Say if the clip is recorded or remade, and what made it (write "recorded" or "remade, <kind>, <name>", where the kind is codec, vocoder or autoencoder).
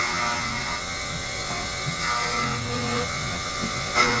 remade, vocoder, WaveNeXt